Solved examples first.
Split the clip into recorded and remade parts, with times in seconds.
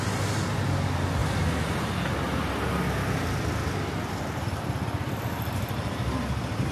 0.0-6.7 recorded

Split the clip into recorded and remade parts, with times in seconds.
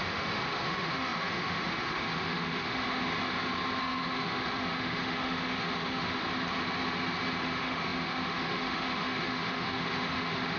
0.0-3.0 remade; 3.0-3.8 recorded; 3.8-6.2 remade; 6.2-7.4 recorded; 7.4-10.6 remade